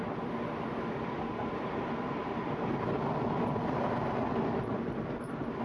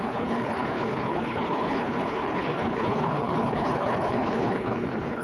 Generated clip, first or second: second